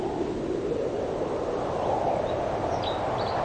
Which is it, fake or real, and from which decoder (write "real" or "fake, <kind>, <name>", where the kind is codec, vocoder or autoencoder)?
real